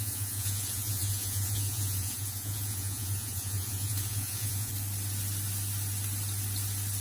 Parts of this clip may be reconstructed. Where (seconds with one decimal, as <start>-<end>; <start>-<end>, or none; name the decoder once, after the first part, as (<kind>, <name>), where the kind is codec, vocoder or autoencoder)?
0.0-4.7 (vocoder, Vocos)